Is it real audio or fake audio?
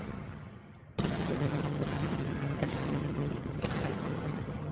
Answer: fake